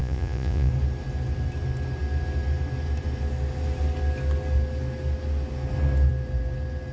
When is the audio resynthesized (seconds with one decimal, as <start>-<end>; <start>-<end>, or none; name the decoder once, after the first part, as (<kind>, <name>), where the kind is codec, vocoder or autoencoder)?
0.0-0.7 (vocoder, Vocos)